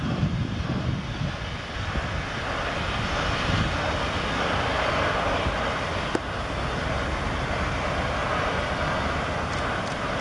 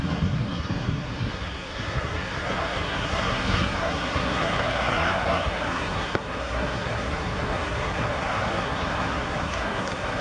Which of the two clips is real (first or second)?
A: first